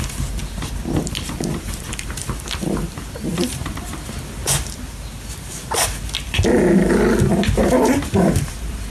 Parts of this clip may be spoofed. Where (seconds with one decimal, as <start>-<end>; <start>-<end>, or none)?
0.0-0.4; 1.0-4.4; 8.2-8.9